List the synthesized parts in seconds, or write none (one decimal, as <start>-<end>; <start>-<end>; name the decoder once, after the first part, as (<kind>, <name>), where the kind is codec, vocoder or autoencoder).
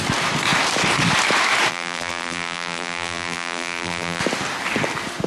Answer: 1.7-4.2 (vocoder, BigVGAN v2)